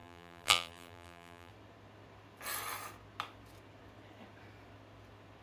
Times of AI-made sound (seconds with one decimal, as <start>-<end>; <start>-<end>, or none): 0.0-1.5